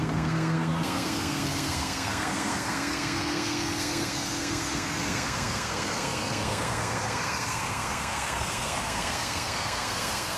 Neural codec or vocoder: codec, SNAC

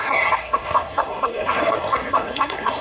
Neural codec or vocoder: codec, SNAC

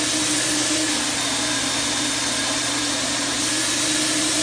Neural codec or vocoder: none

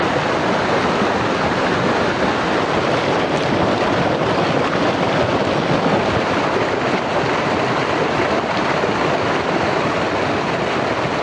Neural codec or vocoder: none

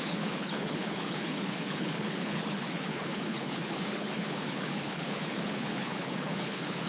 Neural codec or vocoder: codec, HILCodec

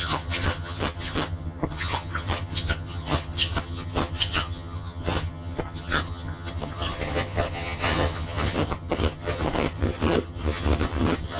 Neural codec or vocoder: vocoder, HiFi-GAN